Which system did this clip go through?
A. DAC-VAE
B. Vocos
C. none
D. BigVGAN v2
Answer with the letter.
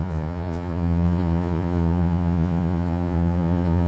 B